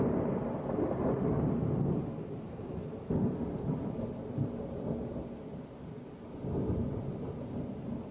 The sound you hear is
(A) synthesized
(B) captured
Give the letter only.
B